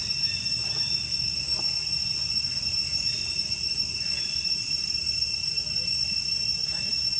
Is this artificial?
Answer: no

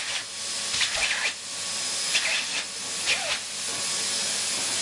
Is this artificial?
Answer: no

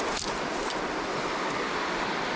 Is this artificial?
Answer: yes